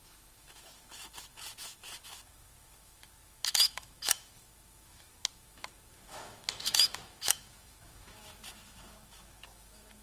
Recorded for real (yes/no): no